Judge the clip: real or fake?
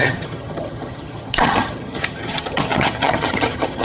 fake